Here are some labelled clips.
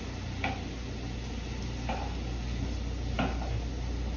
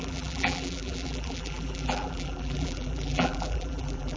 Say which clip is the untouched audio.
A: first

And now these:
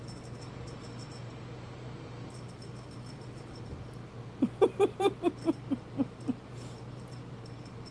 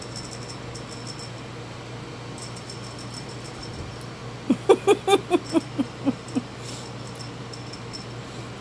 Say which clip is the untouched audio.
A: second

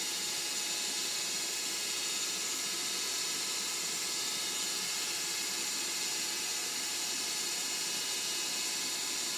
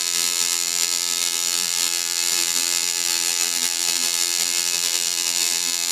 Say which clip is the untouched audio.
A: first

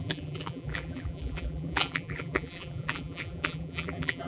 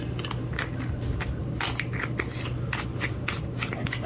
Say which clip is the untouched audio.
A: second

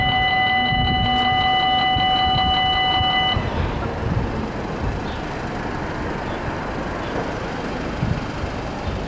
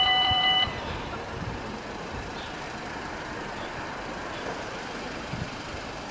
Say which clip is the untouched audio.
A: first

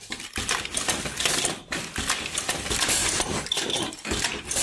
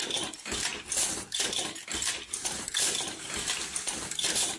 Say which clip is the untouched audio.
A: second